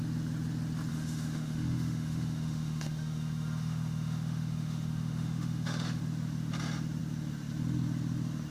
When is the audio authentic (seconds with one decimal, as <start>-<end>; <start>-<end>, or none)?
0.0-0.9; 6.0-8.5